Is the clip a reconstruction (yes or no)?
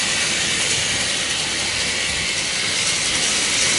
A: no